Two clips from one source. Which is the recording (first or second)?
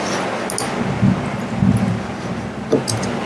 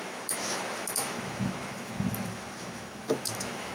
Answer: first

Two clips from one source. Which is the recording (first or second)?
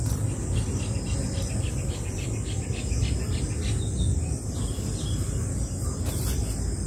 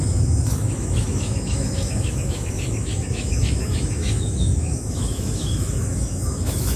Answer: first